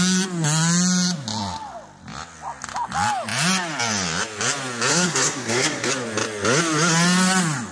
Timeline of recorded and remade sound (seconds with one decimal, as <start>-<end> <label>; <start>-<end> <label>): 0.0-4.9 recorded; 4.9-5.9 remade; 5.9-7.7 recorded